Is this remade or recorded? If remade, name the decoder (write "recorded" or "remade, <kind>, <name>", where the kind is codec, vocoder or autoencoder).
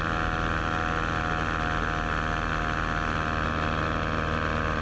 recorded